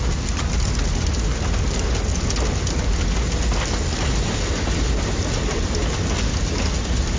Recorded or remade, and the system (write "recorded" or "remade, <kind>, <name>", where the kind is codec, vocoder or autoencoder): recorded